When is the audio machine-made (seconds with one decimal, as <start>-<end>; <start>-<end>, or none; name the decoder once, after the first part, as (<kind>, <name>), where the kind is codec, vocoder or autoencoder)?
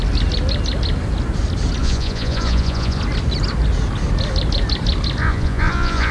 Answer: 1.8-3.0 (vocoder, Vocos); 5.2-6.1